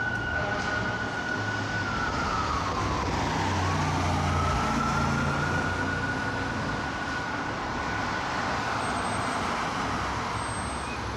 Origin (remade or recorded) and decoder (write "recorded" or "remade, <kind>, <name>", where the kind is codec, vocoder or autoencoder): recorded